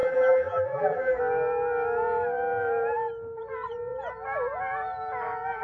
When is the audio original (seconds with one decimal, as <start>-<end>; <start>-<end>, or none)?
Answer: 1.2-5.6